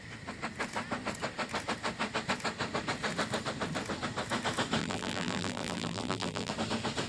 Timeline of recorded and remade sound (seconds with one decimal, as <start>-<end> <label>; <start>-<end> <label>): 0.0-4.8 recorded; 4.8-6.5 remade; 6.5-7.1 recorded